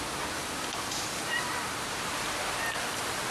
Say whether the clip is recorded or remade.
recorded